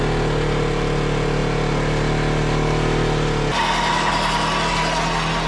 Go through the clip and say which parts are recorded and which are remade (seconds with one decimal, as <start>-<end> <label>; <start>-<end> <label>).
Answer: 0.0-5.5 recorded

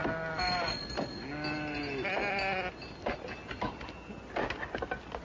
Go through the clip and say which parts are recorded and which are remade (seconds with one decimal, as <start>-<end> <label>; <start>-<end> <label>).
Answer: 0.0-5.2 recorded

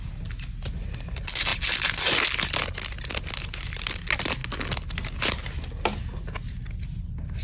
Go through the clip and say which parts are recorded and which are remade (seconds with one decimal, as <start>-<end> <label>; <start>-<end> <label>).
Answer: 0.0-7.4 recorded

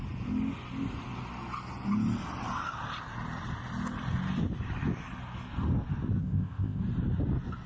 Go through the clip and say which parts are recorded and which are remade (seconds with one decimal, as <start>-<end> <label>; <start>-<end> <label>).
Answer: 0.0-6.2 recorded; 6.2-6.8 remade; 6.8-7.7 recorded

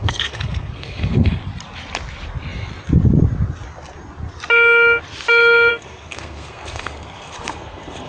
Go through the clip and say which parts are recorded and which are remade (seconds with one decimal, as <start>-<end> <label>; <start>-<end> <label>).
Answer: 0.0-1.4 remade; 1.4-5.7 recorded; 5.7-8.1 remade

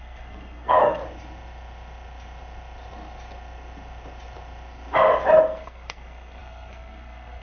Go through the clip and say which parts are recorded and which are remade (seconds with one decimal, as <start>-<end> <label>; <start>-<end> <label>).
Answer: 0.0-1.0 remade; 1.0-5.4 recorded; 5.4-7.4 remade

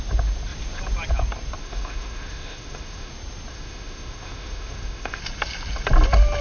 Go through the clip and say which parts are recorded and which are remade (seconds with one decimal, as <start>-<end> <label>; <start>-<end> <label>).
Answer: 0.0-1.6 recorded; 1.6-3.1 remade; 3.1-3.5 recorded; 3.5-5.2 remade; 5.2-6.4 recorded

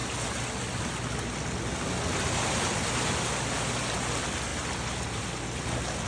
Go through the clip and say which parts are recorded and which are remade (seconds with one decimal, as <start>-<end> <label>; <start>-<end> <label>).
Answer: 0.0-6.1 recorded